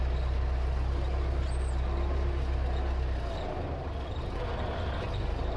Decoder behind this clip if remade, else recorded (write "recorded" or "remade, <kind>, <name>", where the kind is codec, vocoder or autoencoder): recorded